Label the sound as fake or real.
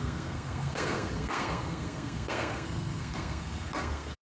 fake